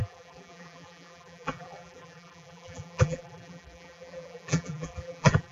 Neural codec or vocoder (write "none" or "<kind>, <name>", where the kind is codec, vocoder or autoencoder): vocoder, BigVGAN v2